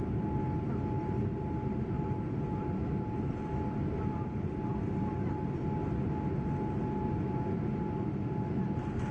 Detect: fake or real real